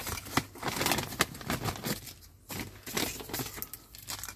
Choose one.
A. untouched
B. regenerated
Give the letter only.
A